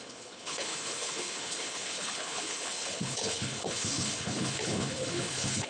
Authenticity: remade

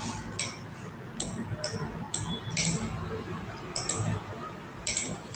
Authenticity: recorded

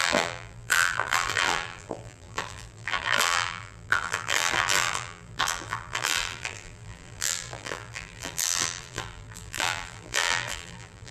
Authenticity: remade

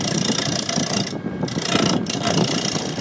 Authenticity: recorded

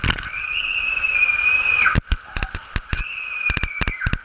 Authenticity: recorded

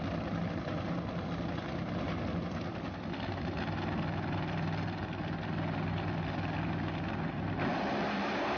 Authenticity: recorded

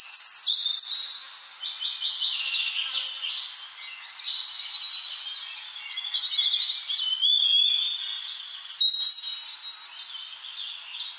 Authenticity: recorded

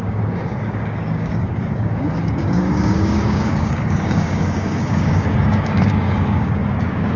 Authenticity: remade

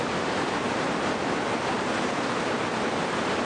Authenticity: recorded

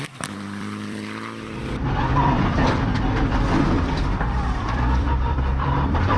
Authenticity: remade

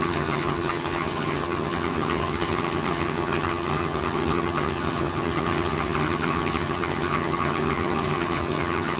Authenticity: remade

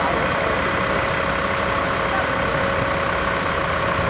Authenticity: recorded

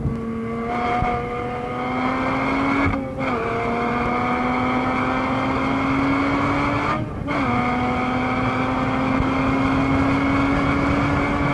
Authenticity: recorded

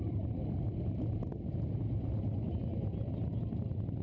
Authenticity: recorded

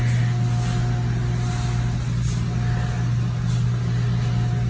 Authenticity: recorded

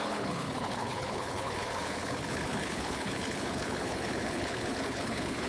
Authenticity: remade